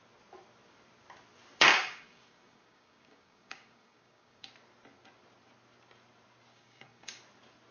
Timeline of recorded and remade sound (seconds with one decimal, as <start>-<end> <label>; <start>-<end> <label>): 0.0-1.7 recorded; 1.7-4.5 remade; 4.5-6.5 recorded; 6.5-7.2 remade; 7.2-7.7 recorded